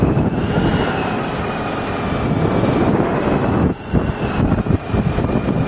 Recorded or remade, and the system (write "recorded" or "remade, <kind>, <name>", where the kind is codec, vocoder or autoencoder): recorded